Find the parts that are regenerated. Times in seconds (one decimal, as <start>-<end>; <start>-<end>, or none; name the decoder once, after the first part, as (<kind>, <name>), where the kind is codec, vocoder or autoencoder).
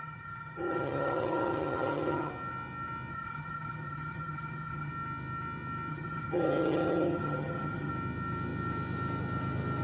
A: 0.0-2.3 (vocoder, HiFi-GAN); 3.1-4.9; 5.9-7.9